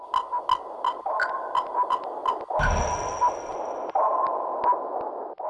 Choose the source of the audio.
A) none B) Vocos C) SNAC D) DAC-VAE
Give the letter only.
A